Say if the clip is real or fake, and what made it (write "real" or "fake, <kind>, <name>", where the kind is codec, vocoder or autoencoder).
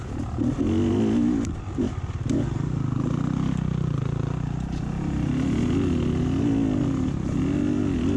real